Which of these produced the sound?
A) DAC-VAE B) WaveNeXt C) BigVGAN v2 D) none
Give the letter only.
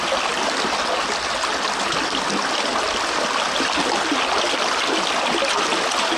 D